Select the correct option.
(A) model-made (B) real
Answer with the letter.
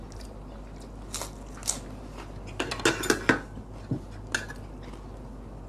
B